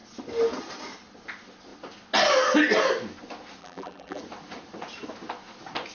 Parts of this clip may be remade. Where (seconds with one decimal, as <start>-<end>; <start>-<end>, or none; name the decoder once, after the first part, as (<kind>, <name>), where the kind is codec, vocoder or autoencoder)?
3.6-4.2 (vocoder, BigVGAN v2)